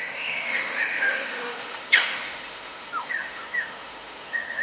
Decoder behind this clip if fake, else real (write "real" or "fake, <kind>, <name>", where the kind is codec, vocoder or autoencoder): fake, autoencoder, DAC-VAE